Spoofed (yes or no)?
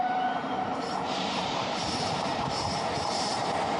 yes